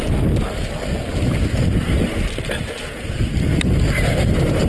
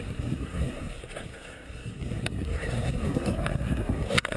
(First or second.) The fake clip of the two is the second